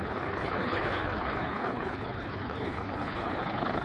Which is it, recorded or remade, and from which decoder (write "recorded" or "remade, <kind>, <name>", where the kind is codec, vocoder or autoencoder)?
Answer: remade, codec, HILCodec